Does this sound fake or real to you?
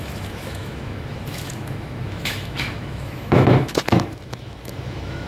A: fake